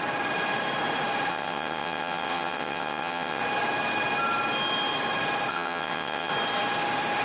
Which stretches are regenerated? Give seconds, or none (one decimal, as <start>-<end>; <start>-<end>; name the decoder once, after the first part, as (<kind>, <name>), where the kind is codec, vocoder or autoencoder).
1.3-3.4 (vocoder, WaveNeXt); 5.5-6.3